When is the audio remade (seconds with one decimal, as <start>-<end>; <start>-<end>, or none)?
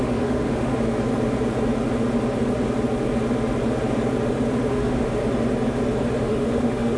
0.0-0.7; 4.7-5.2; 6.2-7.0